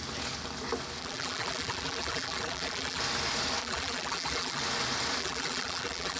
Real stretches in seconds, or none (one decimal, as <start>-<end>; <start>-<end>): 0.0-1.0; 3.0-3.6; 4.6-5.2